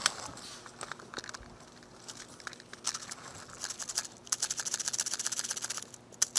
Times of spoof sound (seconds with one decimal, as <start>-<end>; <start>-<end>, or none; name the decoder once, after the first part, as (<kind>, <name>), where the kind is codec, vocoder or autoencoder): none